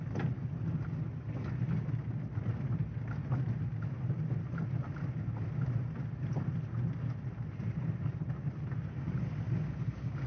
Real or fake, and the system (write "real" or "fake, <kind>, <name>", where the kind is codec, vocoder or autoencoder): real